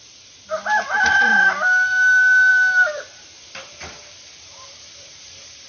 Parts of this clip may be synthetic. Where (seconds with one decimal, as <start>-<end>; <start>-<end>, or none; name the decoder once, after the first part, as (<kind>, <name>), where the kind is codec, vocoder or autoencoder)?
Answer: 0.0-1.3 (vocoder, BigVGAN v2); 2.5-5.7